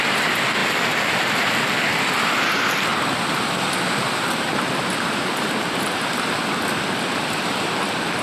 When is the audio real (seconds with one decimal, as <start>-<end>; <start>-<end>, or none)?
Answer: 0.0-0.6; 1.2-2.9; 7.6-8.2

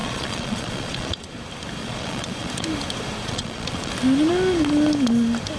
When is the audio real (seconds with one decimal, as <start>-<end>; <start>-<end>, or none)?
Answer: 1.4-1.8; 2.5-3.2; 3.9-5.6

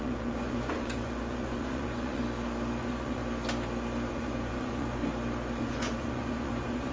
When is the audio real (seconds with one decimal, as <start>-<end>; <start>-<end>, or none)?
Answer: 2.2-2.8; 3.2-4.1; 5.0-5.6

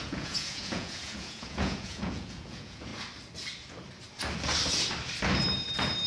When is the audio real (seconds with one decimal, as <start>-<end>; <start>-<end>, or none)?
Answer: 2.9-6.1

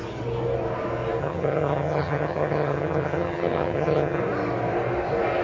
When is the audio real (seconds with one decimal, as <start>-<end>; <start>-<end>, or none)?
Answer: 0.0-1.2; 4.2-5.4

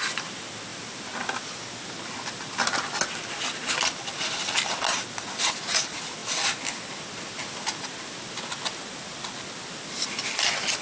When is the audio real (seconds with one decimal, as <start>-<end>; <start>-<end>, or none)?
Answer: 0.0-10.8